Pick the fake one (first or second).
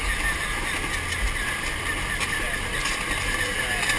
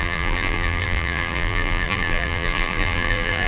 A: second